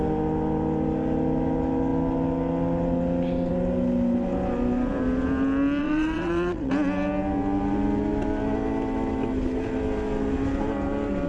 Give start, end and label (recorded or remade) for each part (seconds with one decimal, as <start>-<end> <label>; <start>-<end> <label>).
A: 0.0-5.8 recorded; 5.8-6.7 remade; 6.7-11.3 recorded